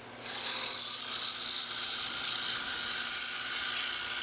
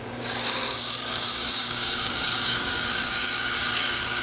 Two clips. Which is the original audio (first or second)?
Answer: first